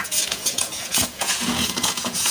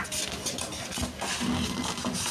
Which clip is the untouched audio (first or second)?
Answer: second